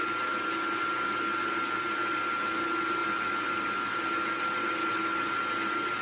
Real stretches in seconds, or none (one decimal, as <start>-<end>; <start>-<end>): 0.0-6.0